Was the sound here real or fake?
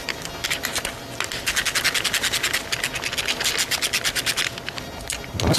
real